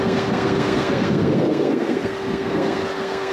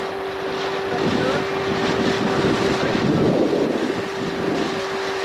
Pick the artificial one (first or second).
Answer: first